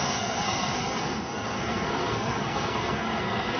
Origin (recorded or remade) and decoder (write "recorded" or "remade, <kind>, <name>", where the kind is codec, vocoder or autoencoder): remade, codec, SNAC